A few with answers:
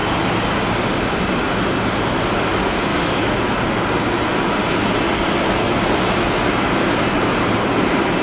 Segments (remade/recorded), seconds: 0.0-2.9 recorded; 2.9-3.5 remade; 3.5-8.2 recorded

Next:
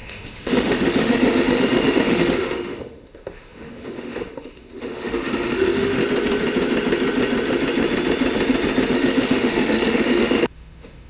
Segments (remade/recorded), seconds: 0.0-6.0 remade; 6.0-8.9 recorded; 8.9-11.1 remade